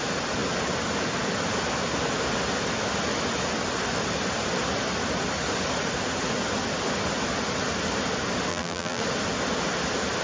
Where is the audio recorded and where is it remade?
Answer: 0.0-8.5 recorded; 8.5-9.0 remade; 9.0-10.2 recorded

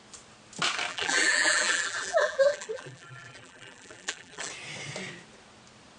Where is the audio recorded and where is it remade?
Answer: 0.0-0.9 recorded; 0.9-4.5 remade; 4.5-6.0 recorded

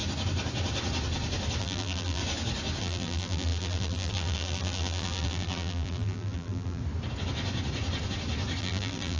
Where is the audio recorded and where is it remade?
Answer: 0.0-1.6 recorded; 1.6-2.2 remade; 2.2-2.8 recorded; 2.8-6.8 remade; 6.8-8.6 recorded; 8.6-9.2 remade

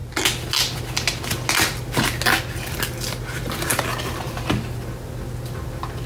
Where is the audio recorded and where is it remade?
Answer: 0.0-6.1 recorded

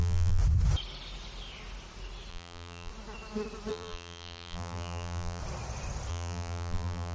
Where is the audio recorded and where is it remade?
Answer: 0.0-0.4 remade; 0.4-2.3 recorded; 2.3-2.9 remade; 2.9-3.7 recorded; 3.7-5.4 remade; 5.4-6.1 recorded; 6.1-7.1 remade

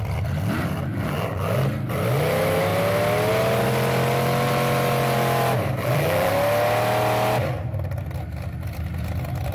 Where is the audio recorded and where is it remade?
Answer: 0.0-0.9 recorded; 0.9-1.6 remade; 1.6-5.8 recorded; 5.8-6.3 remade; 6.3-9.5 recorded